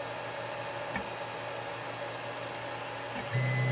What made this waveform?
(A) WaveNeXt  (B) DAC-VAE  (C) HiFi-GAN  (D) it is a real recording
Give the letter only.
D